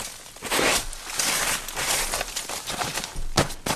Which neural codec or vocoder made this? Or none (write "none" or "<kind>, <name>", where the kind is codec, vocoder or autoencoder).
none